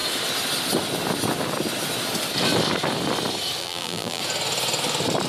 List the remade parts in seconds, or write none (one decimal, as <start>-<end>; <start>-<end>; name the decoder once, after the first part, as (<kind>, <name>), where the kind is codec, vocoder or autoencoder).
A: 3.6-4.2 (vocoder, BigVGAN v2)